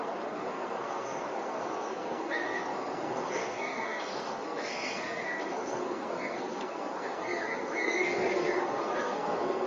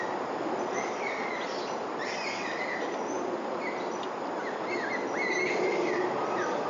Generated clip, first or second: first